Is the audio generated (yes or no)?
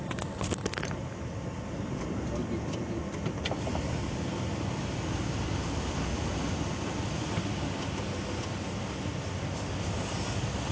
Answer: no